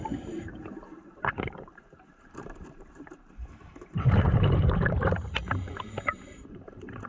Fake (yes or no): yes